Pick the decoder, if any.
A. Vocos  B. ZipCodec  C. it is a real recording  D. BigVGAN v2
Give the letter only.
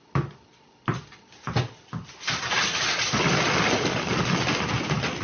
C